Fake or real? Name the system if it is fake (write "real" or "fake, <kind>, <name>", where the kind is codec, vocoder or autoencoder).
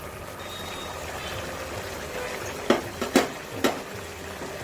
real